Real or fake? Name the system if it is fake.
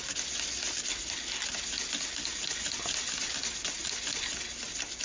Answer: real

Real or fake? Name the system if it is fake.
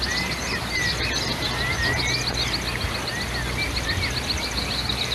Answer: real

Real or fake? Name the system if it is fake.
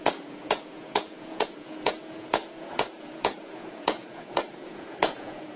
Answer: fake, vocoder, Vocos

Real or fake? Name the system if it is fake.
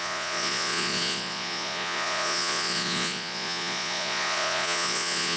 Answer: fake, vocoder, Vocos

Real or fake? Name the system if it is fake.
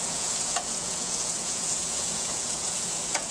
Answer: fake, vocoder, Vocos